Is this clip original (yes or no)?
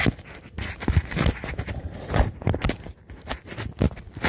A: yes